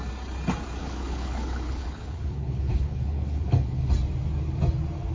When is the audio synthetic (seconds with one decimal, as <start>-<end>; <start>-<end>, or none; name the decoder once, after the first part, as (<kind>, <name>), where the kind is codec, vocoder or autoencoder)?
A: 0.8-3.9 (codec, HILCodec)